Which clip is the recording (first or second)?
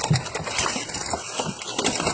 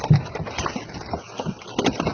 second